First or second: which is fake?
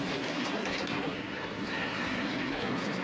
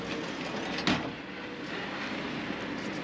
first